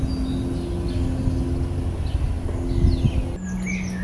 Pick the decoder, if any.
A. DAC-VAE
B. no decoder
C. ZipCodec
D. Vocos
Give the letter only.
B